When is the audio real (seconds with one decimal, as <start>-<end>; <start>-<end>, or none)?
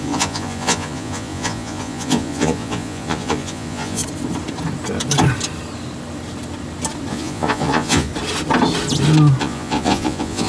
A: 4.0-7.1; 8.1-9.4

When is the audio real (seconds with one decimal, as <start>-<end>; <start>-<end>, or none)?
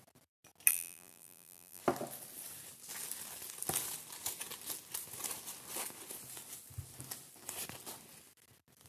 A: 0.0-0.7; 1.8-8.9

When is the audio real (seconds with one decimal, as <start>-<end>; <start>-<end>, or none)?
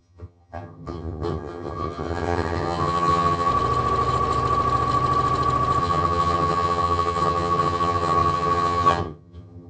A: 3.5-5.8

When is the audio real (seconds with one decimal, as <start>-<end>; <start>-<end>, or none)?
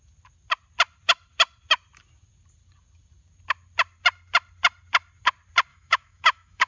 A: 0.0-5.7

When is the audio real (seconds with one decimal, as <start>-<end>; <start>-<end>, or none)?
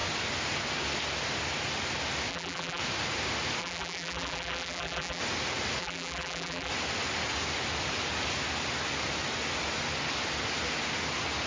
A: 0.0-2.3; 2.8-3.6; 5.2-5.8; 6.7-11.5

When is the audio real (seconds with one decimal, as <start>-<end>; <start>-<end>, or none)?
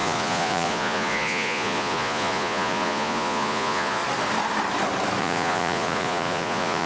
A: 4.0-5.2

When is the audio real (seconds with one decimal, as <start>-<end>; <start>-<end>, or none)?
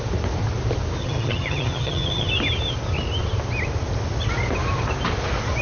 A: 0.0-1.0; 2.3-5.6